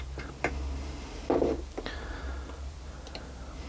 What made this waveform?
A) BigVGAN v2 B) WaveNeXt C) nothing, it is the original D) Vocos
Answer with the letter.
C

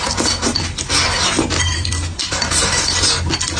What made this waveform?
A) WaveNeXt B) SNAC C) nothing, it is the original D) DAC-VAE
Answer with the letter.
C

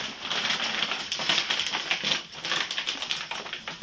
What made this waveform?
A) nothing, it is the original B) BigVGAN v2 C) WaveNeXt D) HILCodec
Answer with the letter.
A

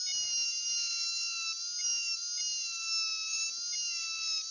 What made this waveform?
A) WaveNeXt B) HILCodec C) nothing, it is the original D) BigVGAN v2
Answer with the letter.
C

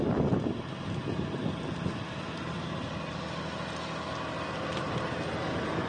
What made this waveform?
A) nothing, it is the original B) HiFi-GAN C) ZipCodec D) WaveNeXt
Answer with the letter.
A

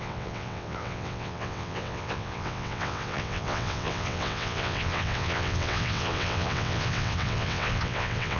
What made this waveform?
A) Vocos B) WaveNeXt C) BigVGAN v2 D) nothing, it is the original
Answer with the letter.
B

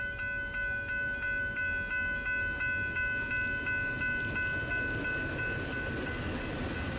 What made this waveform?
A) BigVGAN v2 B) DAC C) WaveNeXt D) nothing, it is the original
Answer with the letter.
D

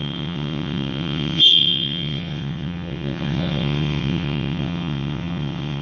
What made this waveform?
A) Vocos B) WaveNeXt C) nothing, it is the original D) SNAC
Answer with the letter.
B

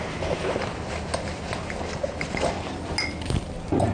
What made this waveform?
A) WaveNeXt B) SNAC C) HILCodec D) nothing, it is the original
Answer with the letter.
D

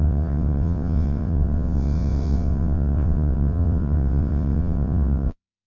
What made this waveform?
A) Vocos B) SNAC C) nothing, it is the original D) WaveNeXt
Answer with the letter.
D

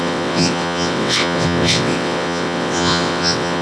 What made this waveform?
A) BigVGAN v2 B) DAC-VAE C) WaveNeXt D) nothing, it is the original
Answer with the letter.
C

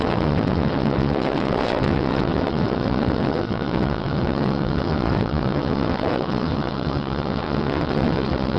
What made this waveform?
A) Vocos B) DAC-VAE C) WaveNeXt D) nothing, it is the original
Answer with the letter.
C